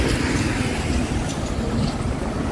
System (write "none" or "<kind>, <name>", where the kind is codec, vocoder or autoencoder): none